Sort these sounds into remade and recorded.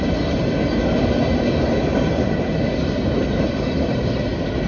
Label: recorded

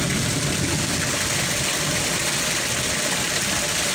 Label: recorded